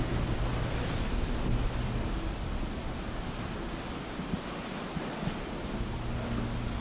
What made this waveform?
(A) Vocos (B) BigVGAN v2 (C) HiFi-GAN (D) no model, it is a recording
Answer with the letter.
D